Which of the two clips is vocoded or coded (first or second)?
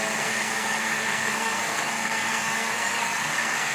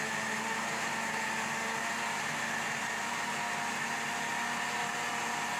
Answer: first